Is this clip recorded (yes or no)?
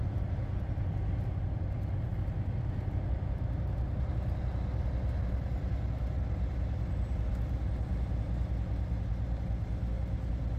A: yes